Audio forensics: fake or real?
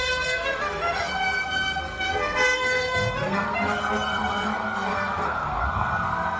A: fake